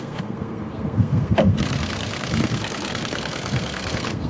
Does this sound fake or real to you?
fake